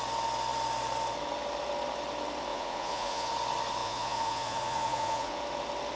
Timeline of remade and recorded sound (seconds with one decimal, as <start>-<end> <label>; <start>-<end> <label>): 0.0-2.5 recorded; 2.5-3.3 remade; 3.3-3.8 recorded; 3.8-5.4 remade; 5.4-6.0 recorded